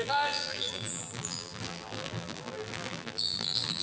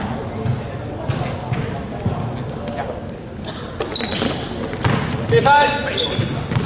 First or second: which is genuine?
second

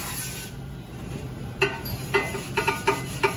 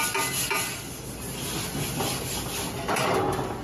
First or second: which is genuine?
second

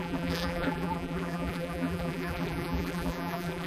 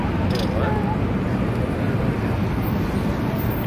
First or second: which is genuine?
second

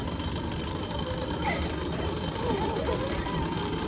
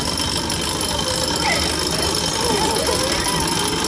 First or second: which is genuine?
second